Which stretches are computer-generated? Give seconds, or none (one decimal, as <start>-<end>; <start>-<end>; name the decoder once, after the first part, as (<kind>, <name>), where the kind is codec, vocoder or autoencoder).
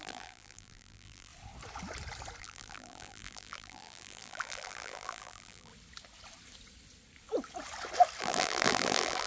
0.0-1.3 (vocoder, BigVGAN v2); 2.4-5.7; 8.2-9.3